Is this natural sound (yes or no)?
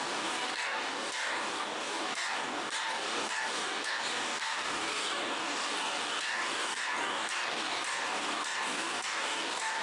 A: no